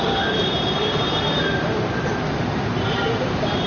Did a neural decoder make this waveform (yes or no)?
yes